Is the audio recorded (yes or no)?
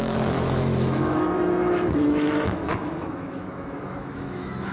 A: no